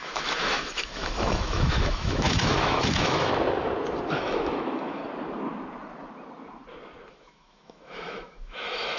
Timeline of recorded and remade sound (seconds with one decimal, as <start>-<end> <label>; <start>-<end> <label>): 0.0-3.3 remade; 3.3-4.1 recorded; 4.1-5.0 remade; 5.0-7.1 recorded; 7.1-9.0 remade